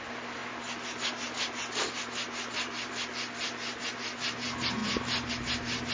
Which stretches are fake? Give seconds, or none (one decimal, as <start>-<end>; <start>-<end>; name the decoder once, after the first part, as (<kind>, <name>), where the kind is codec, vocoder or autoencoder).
none